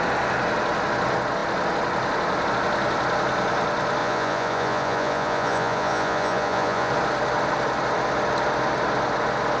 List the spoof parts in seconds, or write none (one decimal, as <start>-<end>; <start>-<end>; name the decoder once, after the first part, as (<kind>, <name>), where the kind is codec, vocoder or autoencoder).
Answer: 4.0-6.9 (vocoder, Vocos)